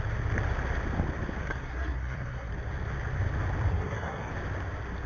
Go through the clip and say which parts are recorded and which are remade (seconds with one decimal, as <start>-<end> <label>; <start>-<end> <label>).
0.0-1.4 recorded; 1.4-2.5 remade; 2.5-3.7 recorded; 3.7-4.3 remade; 4.3-5.1 recorded